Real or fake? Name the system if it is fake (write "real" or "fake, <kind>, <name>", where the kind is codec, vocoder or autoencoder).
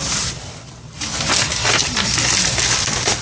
real